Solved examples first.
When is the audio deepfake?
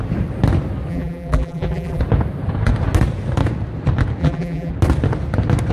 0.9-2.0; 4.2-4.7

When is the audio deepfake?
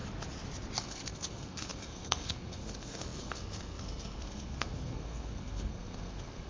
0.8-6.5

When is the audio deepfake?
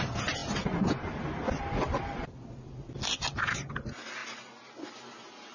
none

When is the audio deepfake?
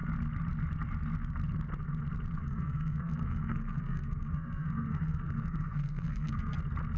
2.4-6.6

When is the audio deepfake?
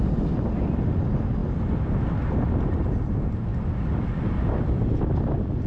none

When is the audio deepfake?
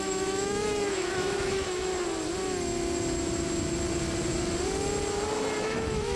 0.0-1.9; 5.6-6.2